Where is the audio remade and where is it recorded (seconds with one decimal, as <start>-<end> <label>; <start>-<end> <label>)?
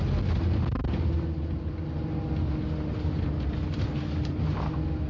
0.0-5.1 recorded